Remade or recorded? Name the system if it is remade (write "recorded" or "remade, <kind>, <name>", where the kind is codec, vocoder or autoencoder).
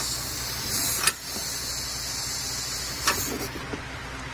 recorded